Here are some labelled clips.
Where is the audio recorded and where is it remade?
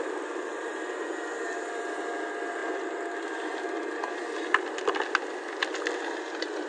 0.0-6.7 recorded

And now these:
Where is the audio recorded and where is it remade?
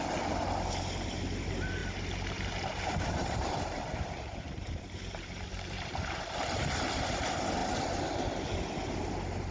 0.0-1.8 recorded; 1.8-6.6 remade; 6.6-9.5 recorded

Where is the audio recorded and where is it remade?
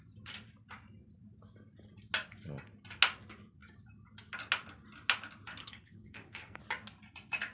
0.0-5.6 recorded; 5.6-6.6 remade; 6.6-7.5 recorded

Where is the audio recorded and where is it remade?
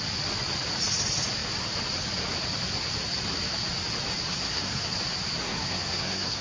0.0-4.3 recorded; 4.3-5.0 remade; 5.0-5.4 recorded; 5.4-6.4 remade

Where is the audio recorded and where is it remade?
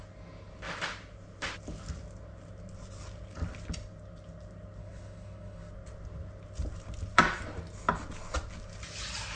0.0-4.8 recorded; 4.8-5.7 remade; 5.7-9.4 recorded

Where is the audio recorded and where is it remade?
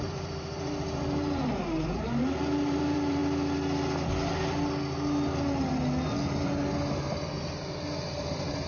0.0-3.2 remade; 3.2-8.2 recorded; 8.2-8.7 remade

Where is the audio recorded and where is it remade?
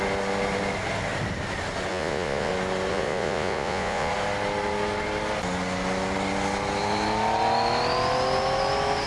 0.0-1.9 recorded; 1.9-2.5 remade; 2.5-2.9 recorded; 2.9-4.1 remade; 4.1-9.1 recorded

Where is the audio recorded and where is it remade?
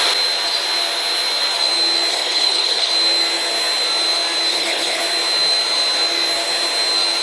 0.0-2.1 recorded; 2.1-2.9 remade; 2.9-4.5 recorded; 4.5-5.0 remade; 5.0-7.2 recorded